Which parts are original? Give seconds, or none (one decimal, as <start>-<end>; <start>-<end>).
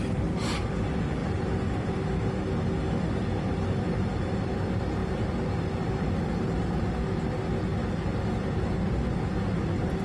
0.0-10.0